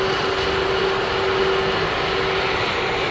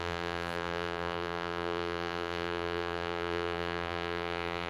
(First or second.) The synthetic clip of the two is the second